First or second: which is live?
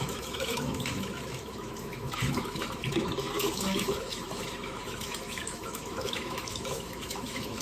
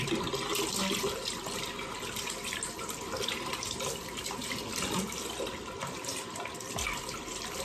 second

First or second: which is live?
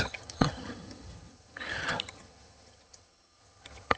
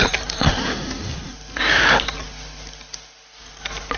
second